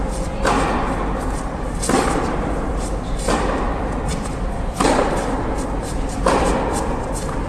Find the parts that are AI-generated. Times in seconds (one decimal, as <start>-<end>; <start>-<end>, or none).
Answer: 4.1-5.1